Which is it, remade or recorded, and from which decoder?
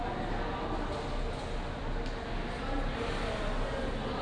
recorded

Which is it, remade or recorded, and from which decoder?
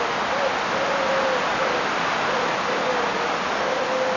recorded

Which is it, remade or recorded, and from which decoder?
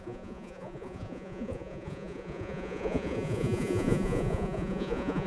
remade, vocoder, Vocos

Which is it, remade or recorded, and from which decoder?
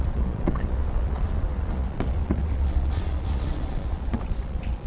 remade, vocoder, Vocos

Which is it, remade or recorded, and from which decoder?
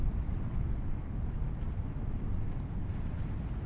recorded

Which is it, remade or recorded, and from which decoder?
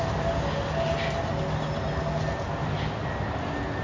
recorded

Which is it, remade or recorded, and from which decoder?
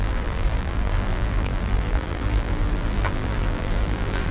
remade, vocoder, BigVGAN v2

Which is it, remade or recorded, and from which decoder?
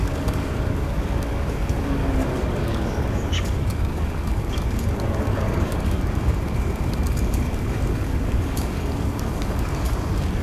remade, codec, DAC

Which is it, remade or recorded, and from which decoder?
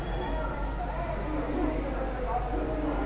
recorded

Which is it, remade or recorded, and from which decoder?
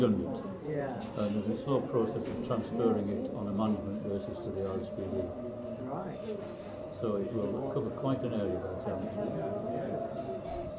recorded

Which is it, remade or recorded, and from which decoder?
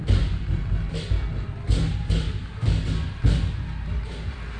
recorded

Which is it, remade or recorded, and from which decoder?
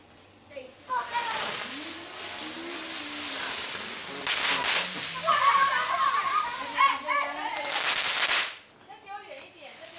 recorded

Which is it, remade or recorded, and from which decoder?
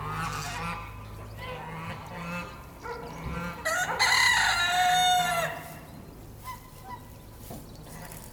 recorded